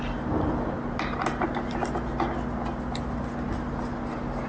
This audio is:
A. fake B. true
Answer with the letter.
B